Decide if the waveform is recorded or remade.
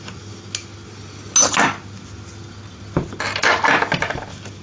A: recorded